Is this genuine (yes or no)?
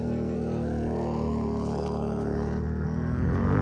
no